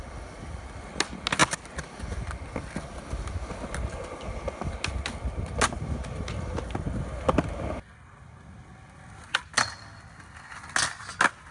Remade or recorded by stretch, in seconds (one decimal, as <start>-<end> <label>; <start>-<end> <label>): 0.0-11.5 recorded